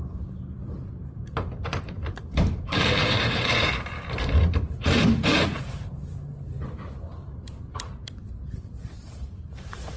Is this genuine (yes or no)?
no